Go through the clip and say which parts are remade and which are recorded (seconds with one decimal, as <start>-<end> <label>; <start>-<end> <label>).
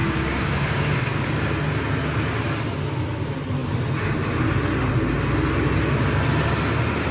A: 0.0-1.3 remade; 1.3-7.1 recorded